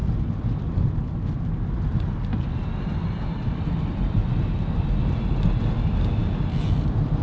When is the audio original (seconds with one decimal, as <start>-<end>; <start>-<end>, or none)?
0.0-7.2